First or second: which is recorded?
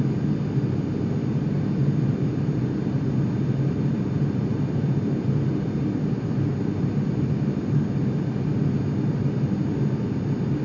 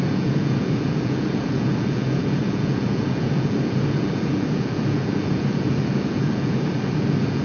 first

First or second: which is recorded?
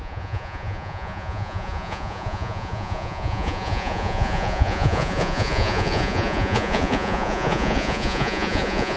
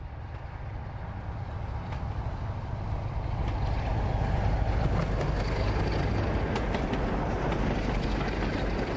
second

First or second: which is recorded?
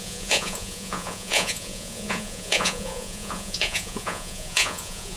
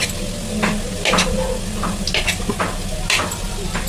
second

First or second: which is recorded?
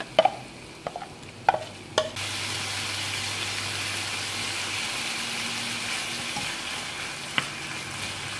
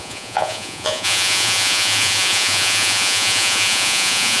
first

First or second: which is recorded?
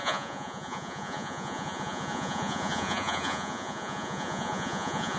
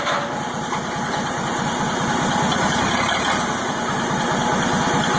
second